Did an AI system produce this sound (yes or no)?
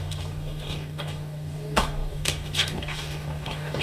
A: yes